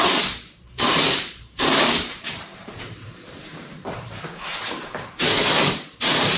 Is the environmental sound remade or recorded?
remade